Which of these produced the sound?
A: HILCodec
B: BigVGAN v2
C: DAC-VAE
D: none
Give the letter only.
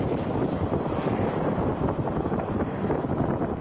D